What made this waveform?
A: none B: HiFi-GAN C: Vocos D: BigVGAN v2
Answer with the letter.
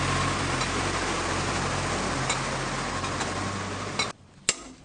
A